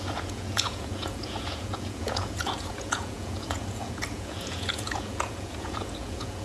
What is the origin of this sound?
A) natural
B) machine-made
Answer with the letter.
B